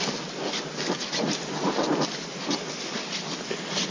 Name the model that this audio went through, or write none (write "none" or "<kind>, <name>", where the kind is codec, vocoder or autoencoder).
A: none